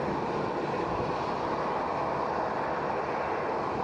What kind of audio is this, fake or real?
real